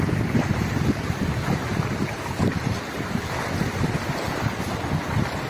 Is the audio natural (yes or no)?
yes